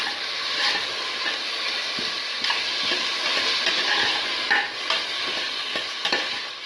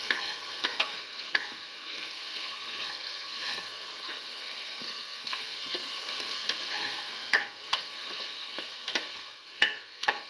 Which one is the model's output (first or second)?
second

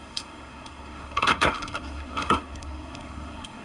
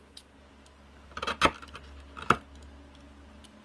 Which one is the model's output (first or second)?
first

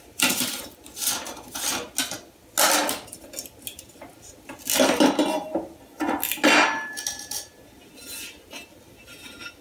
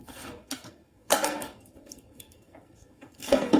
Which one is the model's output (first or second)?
second